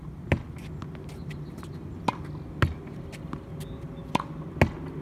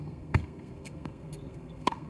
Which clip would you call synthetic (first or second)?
second